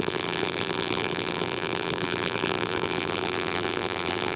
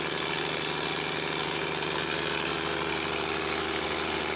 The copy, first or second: first